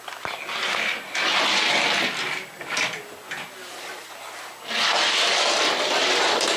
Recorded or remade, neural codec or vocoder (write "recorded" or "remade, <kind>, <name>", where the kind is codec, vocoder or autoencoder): recorded